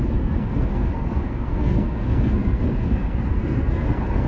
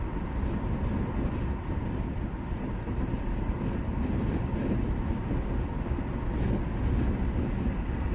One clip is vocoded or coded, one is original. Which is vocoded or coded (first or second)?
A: first